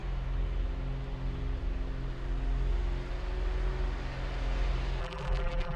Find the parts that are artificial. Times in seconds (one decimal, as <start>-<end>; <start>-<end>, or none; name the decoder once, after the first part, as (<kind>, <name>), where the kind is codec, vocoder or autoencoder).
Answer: 5.0-5.8 (vocoder, BigVGAN v2)